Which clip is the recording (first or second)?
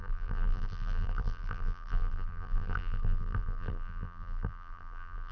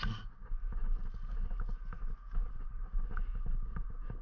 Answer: second